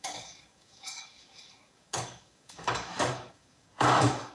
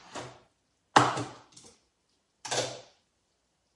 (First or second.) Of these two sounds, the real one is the second